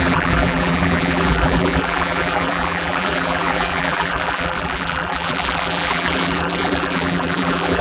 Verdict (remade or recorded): remade